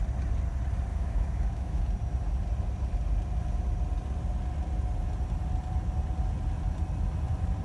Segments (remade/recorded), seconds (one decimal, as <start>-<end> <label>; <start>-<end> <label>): 0.0-0.9 recorded; 0.9-1.8 remade; 1.8-7.6 recorded